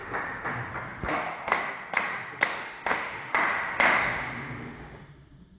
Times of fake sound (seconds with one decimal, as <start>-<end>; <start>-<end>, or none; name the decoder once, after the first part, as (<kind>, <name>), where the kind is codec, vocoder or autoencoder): 0.0-0.7 (autoencoder, DAC-VAE); 1.1-1.7; 2.5-5.6